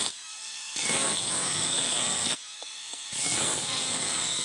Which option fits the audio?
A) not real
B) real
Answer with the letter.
A